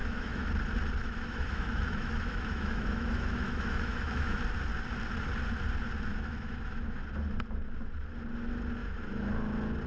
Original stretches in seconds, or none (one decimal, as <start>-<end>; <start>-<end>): 0.5-1.0; 4.4-6.1; 7.0-8.8; 9.3-9.9